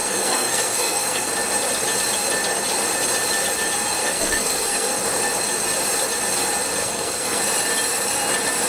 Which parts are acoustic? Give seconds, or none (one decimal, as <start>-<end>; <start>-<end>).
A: 1.3-4.0; 4.9-6.8; 7.4-8.7